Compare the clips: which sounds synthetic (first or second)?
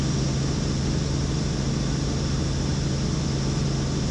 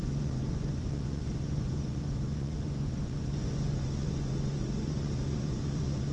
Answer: second